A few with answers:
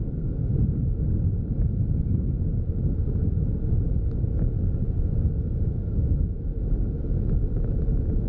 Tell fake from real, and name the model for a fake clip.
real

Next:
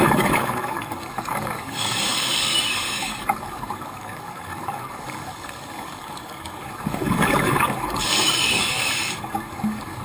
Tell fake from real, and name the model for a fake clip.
fake, codec, DAC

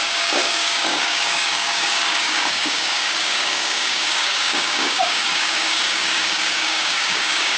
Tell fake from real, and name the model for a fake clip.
fake, codec, DAC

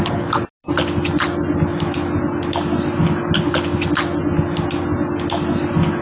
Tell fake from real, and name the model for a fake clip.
real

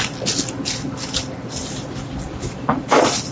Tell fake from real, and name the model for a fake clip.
real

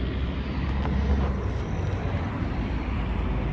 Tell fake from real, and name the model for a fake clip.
real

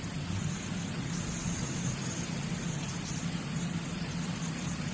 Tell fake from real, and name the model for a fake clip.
real